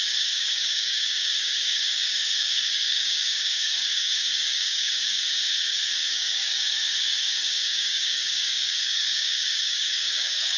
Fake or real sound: fake